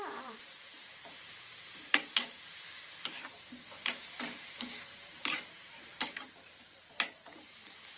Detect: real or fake fake